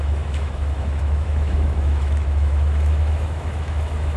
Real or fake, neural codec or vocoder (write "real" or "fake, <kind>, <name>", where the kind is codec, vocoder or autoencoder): fake, autoencoder, DAC-VAE